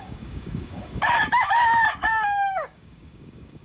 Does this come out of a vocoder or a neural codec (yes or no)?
yes